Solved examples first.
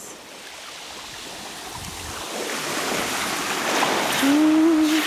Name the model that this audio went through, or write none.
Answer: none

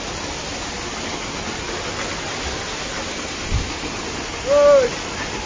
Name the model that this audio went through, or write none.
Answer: none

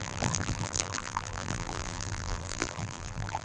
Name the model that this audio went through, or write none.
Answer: vocoder, BigVGAN v2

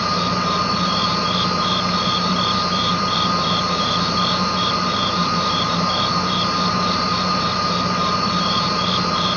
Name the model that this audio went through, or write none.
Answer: vocoder, BigVGAN v2